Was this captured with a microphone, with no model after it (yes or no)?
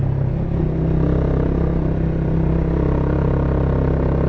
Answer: yes